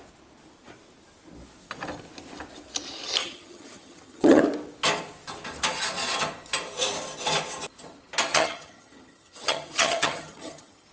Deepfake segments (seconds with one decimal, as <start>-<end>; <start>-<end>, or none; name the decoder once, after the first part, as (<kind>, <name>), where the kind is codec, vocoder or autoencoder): 3.2-4.4 (vocoder, HiFi-GAN); 8.3-10.9